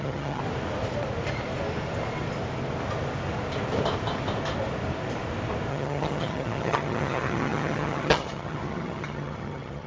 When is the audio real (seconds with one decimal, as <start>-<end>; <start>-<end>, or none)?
0.4-5.7